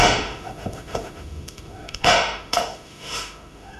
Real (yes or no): no